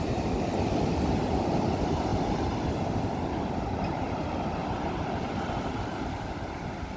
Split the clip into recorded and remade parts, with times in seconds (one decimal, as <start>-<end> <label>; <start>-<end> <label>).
0.0-7.0 remade